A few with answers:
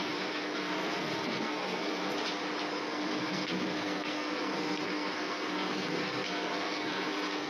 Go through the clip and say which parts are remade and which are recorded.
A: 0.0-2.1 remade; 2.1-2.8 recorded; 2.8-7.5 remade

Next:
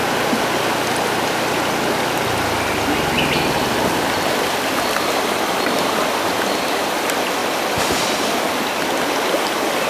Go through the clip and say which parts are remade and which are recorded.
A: 0.0-4.2 recorded; 4.2-7.4 remade; 7.4-9.4 recorded; 9.4-9.9 remade

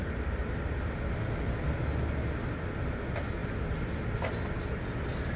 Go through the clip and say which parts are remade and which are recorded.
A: 0.0-5.4 recorded